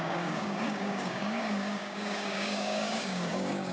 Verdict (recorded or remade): remade